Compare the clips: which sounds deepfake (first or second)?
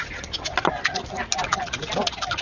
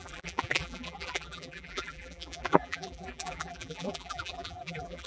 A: second